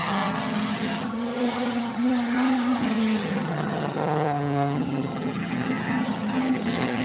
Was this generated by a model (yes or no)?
yes